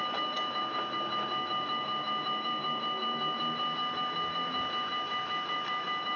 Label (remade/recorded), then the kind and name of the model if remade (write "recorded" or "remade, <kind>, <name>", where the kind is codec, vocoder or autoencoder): remade, autoencoder, DAC-VAE